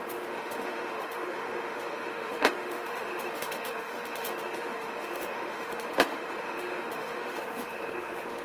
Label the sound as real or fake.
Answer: fake